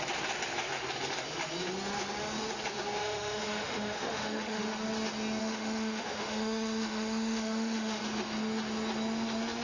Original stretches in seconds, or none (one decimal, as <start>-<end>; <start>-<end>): 0.0-3.0; 4.6-5.4; 8.0-9.6